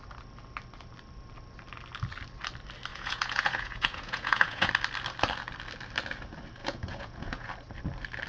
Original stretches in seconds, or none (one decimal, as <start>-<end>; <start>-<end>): 0.0-2.9; 4.7-6.6; 7.5-8.3